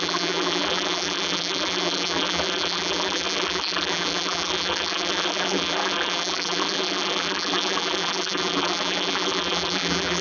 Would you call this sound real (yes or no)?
no